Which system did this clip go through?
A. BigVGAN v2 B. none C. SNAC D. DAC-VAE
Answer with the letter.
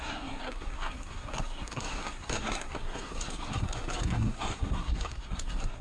C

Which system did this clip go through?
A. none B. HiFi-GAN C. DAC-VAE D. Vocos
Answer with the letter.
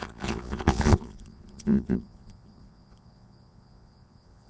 D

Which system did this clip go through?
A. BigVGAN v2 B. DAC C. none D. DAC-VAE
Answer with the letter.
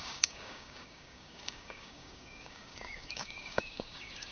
B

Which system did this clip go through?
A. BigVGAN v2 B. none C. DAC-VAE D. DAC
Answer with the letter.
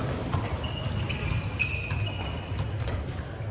B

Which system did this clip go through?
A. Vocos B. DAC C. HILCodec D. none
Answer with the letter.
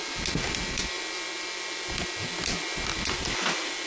D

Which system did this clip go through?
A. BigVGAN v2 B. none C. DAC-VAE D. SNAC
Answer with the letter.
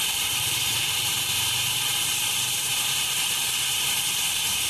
A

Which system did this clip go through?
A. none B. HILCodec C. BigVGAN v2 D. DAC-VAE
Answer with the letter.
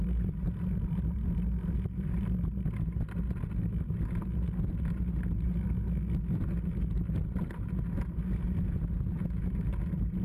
A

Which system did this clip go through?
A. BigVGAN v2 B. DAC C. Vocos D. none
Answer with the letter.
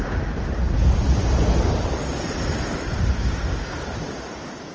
D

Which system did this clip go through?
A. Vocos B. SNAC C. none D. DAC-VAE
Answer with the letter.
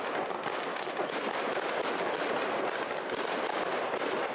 C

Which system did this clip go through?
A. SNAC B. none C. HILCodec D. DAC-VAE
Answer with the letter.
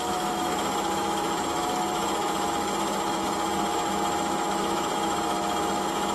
D